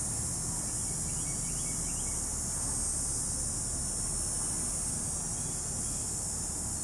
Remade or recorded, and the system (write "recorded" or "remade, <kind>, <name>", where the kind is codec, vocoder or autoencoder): recorded